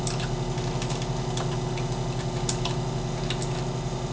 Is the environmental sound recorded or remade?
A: recorded